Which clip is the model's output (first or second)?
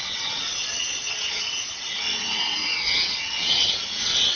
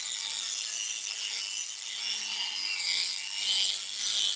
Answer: first